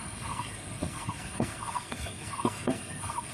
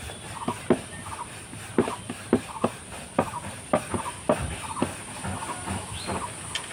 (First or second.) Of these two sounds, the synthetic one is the first